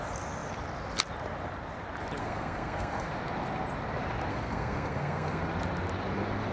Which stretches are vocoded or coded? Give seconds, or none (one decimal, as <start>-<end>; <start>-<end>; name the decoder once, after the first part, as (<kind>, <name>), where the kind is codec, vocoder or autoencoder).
2.2-3.1 (codec, SNAC); 4.3-5.4